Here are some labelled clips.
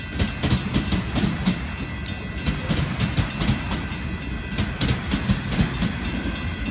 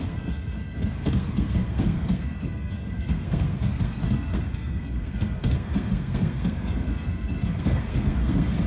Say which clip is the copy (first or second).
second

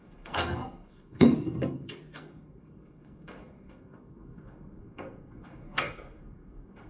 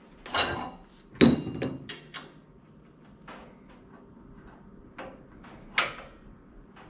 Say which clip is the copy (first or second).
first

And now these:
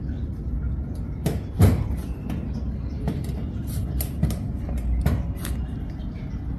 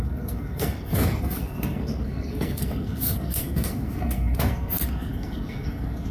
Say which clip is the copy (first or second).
second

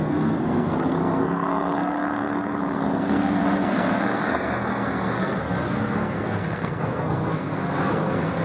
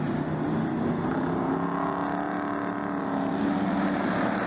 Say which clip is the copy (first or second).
first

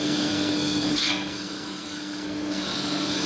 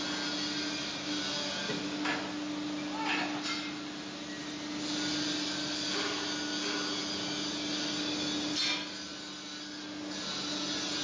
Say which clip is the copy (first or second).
first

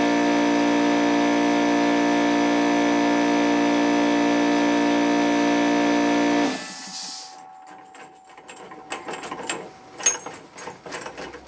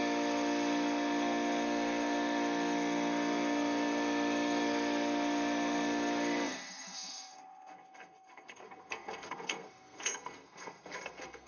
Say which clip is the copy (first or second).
second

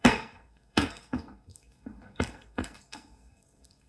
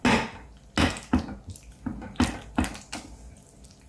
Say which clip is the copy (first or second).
first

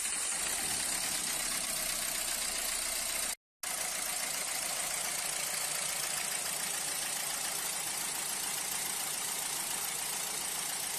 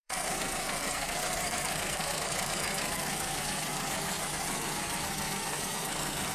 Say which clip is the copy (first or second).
second